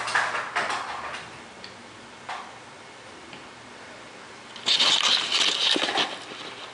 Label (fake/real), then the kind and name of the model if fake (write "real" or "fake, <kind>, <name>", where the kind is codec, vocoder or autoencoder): real